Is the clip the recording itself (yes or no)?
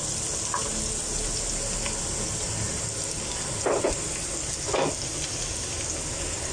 yes